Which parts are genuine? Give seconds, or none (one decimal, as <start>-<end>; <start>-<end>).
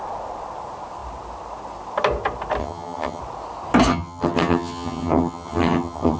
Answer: 0.0-2.6; 3.2-3.9